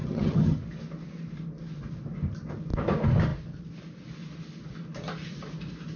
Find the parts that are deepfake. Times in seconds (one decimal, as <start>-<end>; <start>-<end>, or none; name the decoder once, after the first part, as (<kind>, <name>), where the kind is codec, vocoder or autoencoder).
0.0-0.6 (vocoder, HiFi-GAN)